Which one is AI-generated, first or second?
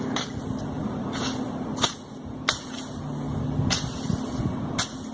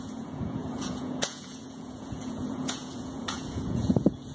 second